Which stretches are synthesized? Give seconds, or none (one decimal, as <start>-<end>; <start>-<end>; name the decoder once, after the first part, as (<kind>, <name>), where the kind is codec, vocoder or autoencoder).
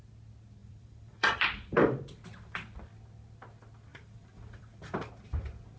0.6-2.2 (vocoder, BigVGAN v2); 3.9-5.1